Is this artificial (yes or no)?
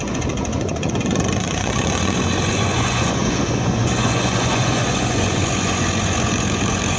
yes